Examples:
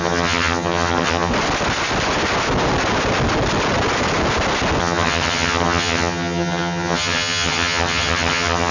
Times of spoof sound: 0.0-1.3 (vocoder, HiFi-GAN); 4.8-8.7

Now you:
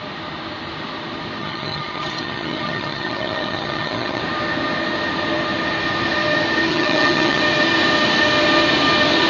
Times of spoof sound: 1.4-4.2 (vocoder, HiFi-GAN); 6.7-7.4